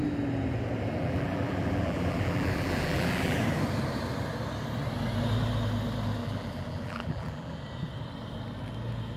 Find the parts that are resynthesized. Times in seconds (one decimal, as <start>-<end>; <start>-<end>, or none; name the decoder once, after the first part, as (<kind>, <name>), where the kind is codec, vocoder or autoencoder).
1.0-3.4 (vocoder, BigVGAN v2); 6.2-7.6